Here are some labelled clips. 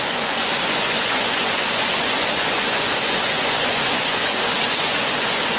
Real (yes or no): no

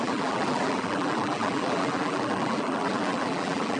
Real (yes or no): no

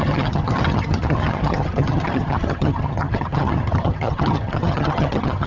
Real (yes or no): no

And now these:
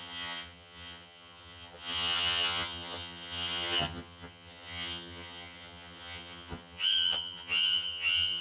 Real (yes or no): no